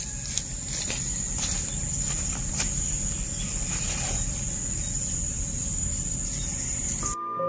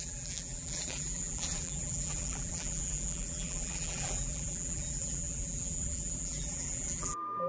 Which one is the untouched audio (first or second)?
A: first